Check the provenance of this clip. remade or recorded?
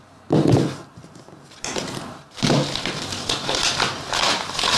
recorded